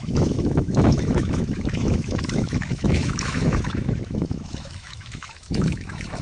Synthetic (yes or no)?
yes